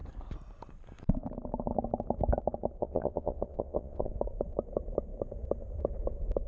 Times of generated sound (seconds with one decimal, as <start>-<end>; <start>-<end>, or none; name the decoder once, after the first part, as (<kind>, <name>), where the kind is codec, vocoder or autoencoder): 2.8-4.1 (vocoder, WaveNeXt)